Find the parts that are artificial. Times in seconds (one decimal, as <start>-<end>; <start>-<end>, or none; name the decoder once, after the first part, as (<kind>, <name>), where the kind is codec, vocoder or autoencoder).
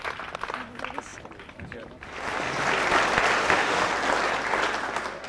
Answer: 3.4-3.9 (autoencoder, DAC-VAE)